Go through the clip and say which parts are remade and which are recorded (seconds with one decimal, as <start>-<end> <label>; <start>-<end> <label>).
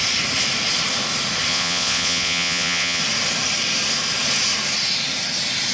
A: 0.0-1.5 recorded; 1.5-3.0 remade; 3.0-5.7 recorded